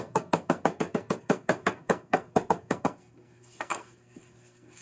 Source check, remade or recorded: remade